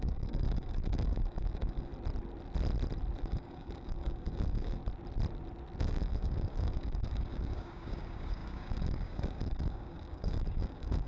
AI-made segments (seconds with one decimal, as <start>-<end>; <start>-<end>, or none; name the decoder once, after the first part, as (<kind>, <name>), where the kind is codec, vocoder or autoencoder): 0.0-1.9 (codec, DAC); 3.2-4.8; 5.8-11.1